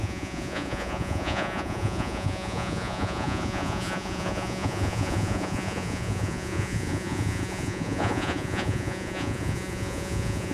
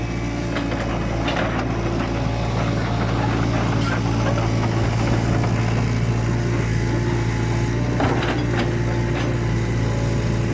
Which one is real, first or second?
second